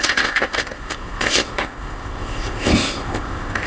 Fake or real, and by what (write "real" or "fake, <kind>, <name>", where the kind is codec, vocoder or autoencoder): fake, codec, ZipCodec